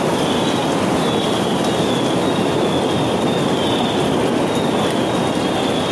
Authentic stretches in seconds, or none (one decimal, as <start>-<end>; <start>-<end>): 0.0-5.9